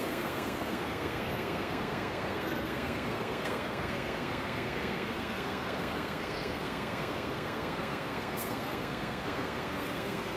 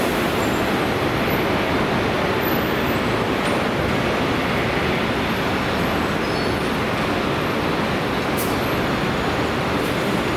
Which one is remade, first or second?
first